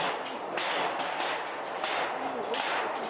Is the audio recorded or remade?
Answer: recorded